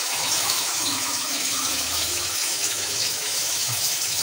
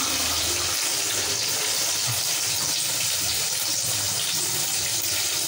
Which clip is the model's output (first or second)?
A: first